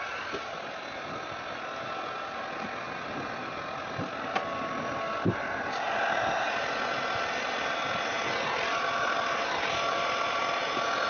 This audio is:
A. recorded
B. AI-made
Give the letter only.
A